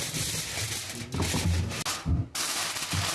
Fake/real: real